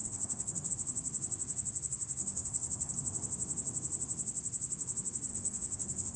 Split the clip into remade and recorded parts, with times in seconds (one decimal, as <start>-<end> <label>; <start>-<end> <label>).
0.0-0.7 remade; 0.7-2.2 recorded; 2.2-2.9 remade; 2.9-5.3 recorded; 5.3-6.2 remade